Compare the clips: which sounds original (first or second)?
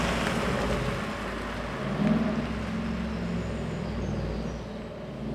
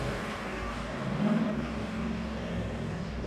first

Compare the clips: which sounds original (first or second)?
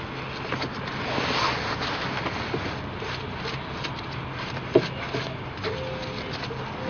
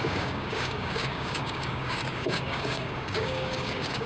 first